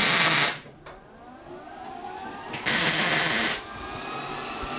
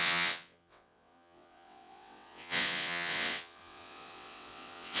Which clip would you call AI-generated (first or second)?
second